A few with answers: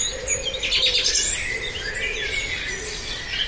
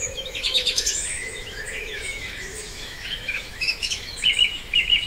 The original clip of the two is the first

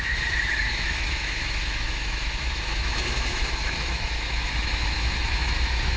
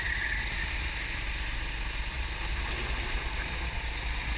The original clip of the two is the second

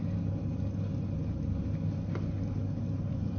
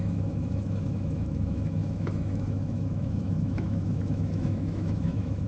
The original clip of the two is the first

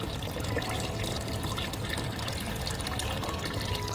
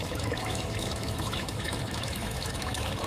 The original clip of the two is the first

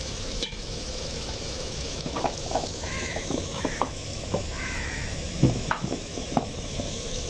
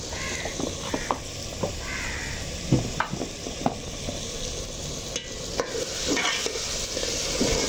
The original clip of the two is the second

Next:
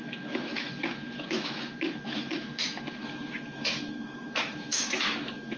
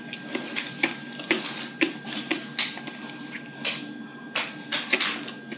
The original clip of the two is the second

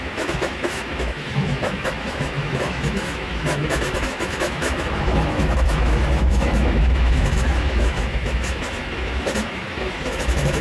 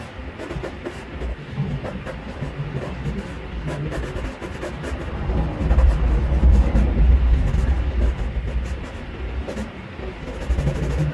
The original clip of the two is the second